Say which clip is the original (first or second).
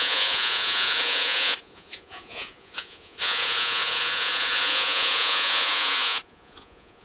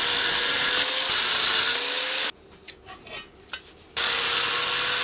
second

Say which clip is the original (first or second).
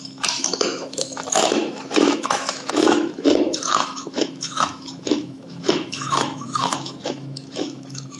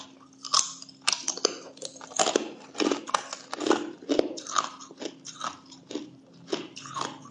second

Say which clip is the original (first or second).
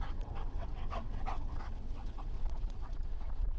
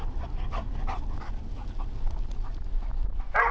second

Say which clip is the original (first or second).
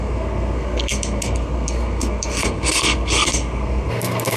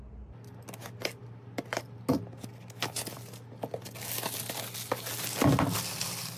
second